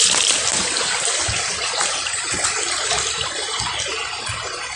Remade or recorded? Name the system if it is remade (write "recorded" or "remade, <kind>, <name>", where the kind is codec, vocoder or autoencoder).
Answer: recorded